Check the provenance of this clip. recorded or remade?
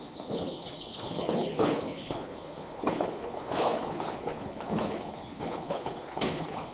remade